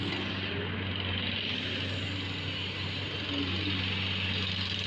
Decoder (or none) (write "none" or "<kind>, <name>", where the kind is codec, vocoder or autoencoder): none